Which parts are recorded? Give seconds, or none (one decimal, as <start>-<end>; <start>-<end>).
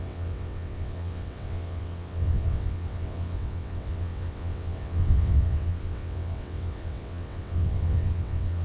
none